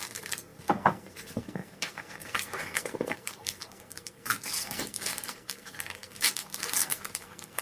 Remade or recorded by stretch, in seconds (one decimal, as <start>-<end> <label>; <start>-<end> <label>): 0.0-7.6 remade